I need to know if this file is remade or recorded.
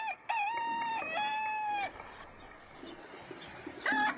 recorded